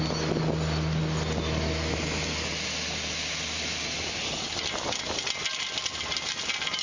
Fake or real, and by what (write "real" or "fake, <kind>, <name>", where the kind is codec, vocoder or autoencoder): real